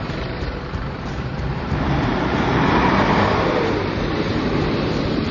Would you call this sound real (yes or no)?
no